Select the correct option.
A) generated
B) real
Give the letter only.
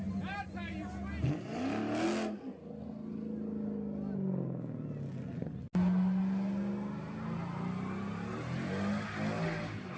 B